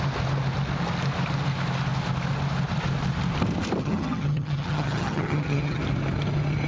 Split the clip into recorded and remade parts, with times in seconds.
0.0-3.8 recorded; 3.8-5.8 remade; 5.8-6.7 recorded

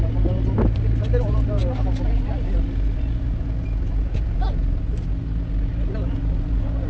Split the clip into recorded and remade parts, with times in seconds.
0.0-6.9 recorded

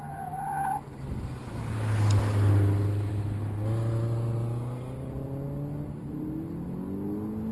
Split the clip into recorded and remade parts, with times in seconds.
0.0-7.5 recorded

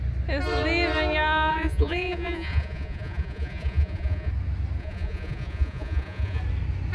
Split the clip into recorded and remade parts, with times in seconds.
0.0-1.5 recorded; 1.5-4.3 remade; 4.3-4.8 recorded; 4.8-6.4 remade; 6.4-6.9 recorded